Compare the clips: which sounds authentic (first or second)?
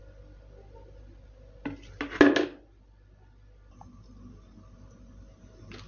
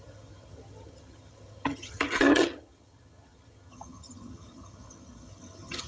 first